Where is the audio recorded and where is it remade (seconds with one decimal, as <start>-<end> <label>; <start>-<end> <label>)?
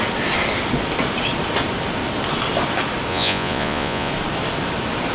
0.0-3.1 recorded; 3.1-4.1 remade; 4.1-5.1 recorded